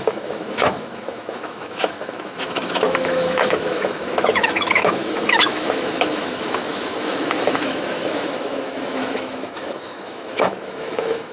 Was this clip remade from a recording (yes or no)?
yes